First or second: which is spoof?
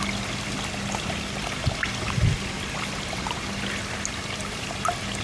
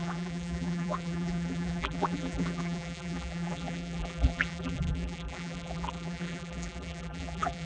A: second